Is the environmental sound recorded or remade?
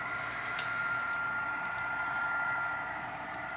remade